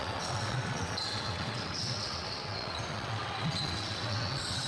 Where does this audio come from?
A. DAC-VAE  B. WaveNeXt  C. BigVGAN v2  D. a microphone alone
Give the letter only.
B